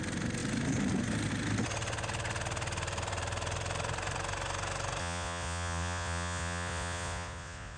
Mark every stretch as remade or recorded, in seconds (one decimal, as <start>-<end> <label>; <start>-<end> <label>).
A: 0.0-5.0 recorded; 5.0-7.8 remade